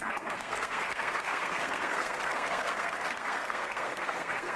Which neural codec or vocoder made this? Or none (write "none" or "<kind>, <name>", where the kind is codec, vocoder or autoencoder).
codec, SNAC